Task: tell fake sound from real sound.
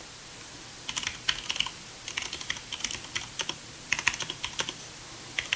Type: fake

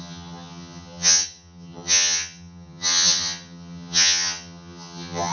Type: fake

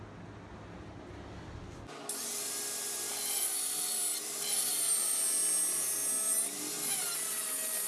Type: real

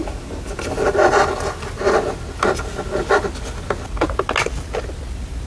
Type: real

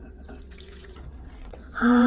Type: fake